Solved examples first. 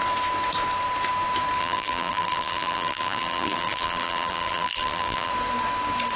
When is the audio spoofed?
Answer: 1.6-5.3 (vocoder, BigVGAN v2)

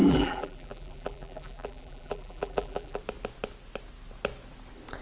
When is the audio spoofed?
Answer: 0.0-3.0 (vocoder, BigVGAN v2)

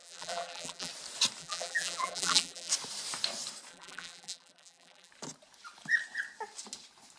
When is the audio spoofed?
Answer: 0.0-0.9 (vocoder, BigVGAN v2); 1.4-2.7; 3.7-5.1

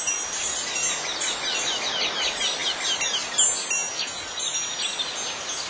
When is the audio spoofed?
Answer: none

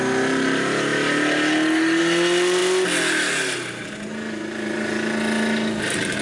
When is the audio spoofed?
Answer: none

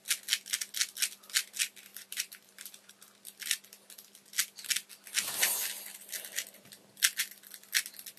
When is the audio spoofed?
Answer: 1.9-2.9 (vocoder, BigVGAN v2)

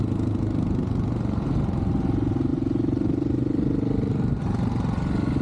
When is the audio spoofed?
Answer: 2.5-4.4 (vocoder, BigVGAN v2)